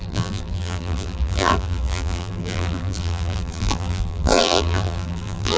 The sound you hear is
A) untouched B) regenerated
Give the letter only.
B